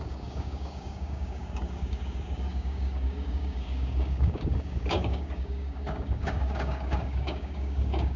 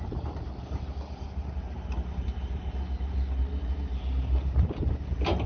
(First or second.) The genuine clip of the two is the second